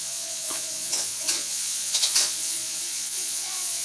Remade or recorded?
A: remade